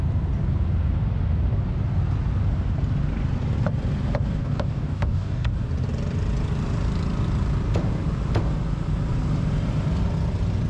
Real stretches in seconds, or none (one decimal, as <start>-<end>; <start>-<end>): 0.0-4.4; 5.5-10.7